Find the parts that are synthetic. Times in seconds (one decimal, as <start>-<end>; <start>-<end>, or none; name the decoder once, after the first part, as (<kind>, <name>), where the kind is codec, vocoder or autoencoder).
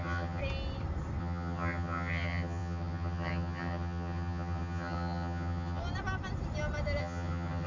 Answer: 0.0-0.4 (vocoder, HiFi-GAN); 1.2-5.8; 7.0-7.7